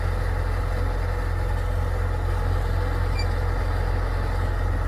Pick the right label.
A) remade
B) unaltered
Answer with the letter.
B